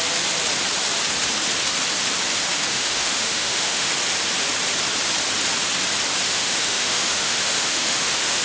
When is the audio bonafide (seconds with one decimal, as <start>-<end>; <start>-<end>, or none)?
0.0-2.7; 3.9-6.3